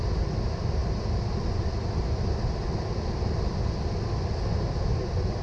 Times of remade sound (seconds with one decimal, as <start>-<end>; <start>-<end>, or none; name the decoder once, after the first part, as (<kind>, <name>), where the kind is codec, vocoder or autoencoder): none